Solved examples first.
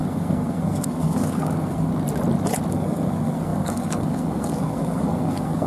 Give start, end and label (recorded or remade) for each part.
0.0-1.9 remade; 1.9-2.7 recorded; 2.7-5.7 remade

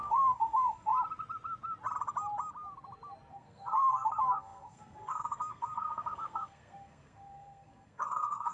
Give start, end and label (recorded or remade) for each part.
0.0-0.9 remade; 0.9-3.3 recorded; 3.3-8.5 remade

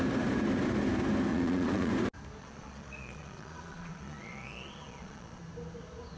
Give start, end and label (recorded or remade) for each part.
0.0-1.3 recorded; 1.3-1.9 remade; 1.9-2.4 recorded; 2.4-5.4 remade; 5.4-6.2 recorded

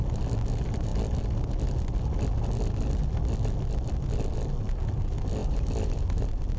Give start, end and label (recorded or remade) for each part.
0.0-5.4 recorded; 5.4-6.0 remade; 6.0-6.6 recorded